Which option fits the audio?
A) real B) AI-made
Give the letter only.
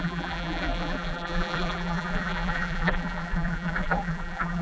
B